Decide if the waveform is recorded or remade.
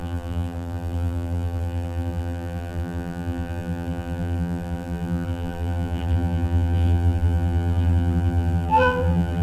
remade